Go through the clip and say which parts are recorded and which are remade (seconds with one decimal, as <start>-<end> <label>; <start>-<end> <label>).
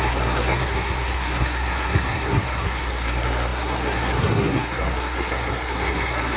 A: 0.0-6.4 remade